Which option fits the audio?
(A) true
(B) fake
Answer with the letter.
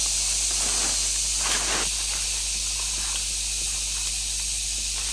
A